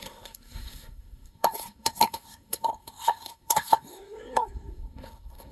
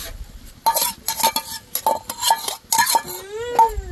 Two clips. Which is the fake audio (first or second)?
first